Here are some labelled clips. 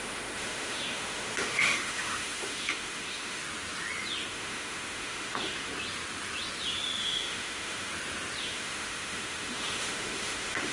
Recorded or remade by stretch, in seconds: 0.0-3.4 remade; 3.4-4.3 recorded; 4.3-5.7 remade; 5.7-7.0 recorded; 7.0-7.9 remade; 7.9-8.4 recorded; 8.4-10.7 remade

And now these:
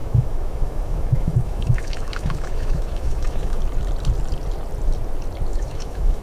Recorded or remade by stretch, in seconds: 0.0-3.6 remade; 3.6-5.5 recorded; 5.5-6.2 remade

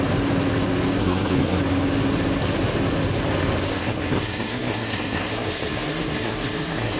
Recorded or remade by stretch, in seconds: 0.0-1.0 recorded; 1.0-1.6 remade; 1.6-3.7 recorded; 3.7-7.0 remade

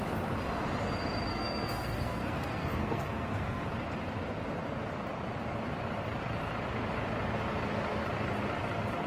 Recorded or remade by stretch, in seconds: 0.0-1.3 recorded; 1.3-3.7 remade; 3.7-9.1 recorded